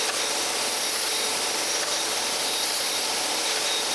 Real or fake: real